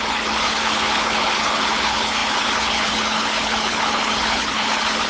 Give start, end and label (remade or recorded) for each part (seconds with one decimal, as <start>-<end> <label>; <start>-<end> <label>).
0.0-5.1 remade